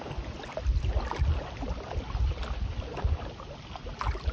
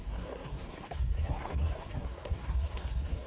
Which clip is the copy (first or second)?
second